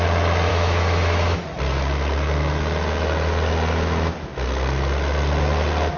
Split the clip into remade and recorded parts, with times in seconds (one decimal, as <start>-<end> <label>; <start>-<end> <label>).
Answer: 0.0-0.5 recorded; 0.5-1.4 remade; 1.4-6.0 recorded

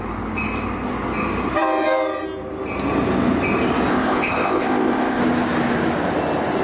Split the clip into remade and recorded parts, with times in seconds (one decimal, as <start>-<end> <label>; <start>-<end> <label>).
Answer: 0.0-3.9 recorded; 3.9-5.2 remade; 5.2-6.6 recorded

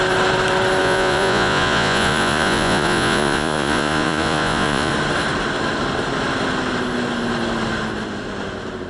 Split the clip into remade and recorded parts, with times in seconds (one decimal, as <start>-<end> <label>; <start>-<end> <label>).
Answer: 0.0-0.8 recorded; 0.8-4.9 remade; 4.9-8.9 recorded

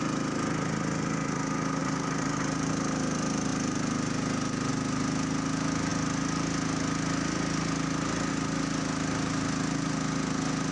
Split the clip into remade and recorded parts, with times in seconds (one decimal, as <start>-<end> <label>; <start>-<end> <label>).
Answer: 0.0-1.8 recorded; 1.8-2.7 remade; 2.7-10.7 recorded

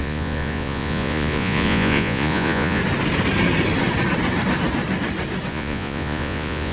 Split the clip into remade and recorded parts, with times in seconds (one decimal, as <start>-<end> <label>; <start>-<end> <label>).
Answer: 0.0-2.8 remade; 2.8-5.5 recorded; 5.5-6.7 remade